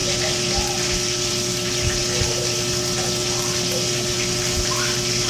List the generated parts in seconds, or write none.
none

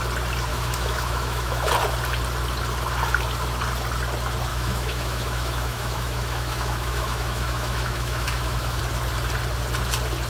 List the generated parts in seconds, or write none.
0.5-1.7 (autoencoder, DAC-VAE); 4.5-8.8

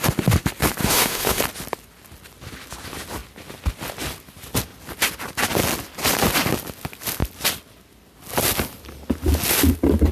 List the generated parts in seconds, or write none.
0.8-1.4 (autoencoder, DAC-VAE)

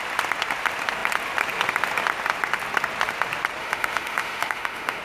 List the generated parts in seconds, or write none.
3.6-5.0 (autoencoder, DAC-VAE)